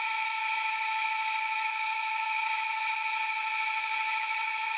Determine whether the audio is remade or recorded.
remade